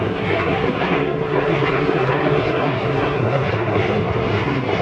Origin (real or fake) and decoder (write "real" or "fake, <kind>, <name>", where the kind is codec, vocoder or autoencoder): fake, codec, SNAC